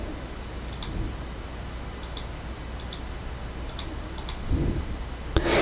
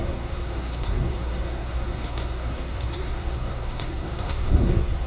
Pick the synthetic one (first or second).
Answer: second